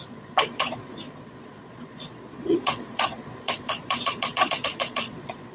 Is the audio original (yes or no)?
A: no